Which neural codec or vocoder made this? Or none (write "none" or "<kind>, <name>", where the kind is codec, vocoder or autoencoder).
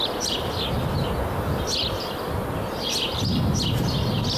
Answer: none